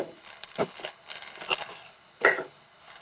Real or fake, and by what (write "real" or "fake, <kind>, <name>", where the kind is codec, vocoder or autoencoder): fake, codec, HILCodec